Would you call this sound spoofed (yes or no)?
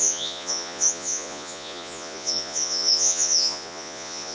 yes